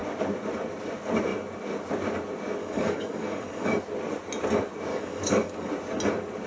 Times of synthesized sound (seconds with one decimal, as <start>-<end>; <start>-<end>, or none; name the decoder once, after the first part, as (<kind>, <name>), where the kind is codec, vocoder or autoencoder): 2.6-3.8 (codec, DAC); 4.9-5.7